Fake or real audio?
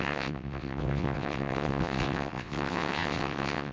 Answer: fake